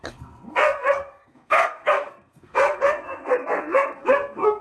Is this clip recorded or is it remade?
remade